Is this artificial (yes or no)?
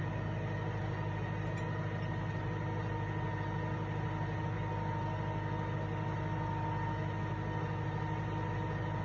no